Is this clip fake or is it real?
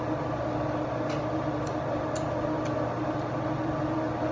real